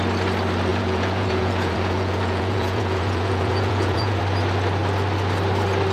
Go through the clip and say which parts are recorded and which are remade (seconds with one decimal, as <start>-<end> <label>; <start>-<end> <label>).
0.0-0.7 recorded; 0.7-4.2 remade; 4.2-5.9 recorded